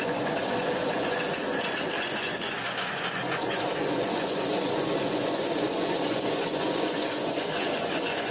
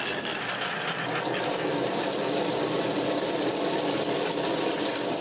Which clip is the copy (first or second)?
first